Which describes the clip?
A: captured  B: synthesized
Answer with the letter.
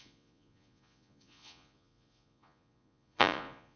B